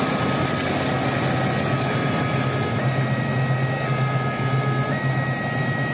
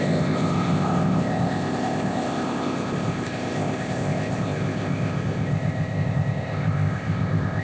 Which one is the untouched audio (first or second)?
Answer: first